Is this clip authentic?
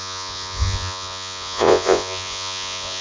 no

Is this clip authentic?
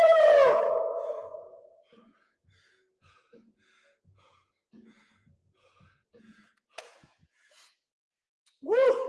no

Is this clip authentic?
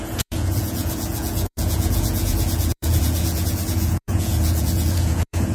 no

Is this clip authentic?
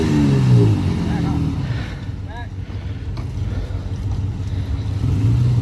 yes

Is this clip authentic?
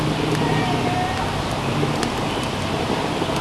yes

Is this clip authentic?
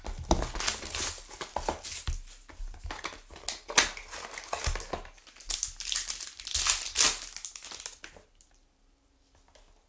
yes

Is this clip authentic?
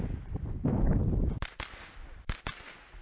yes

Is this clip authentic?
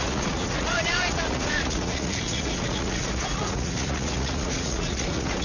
no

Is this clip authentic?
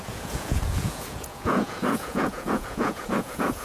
no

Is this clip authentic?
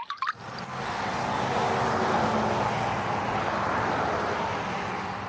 yes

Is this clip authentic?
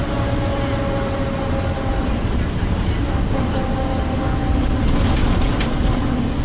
yes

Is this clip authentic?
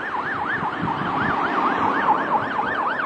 yes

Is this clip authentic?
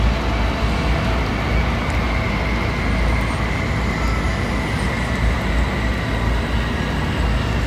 yes